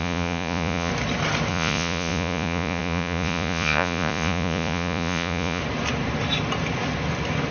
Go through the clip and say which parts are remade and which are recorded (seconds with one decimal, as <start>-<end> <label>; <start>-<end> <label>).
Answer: 0.0-0.9 remade; 0.9-1.5 recorded; 1.5-5.6 remade; 5.6-7.5 recorded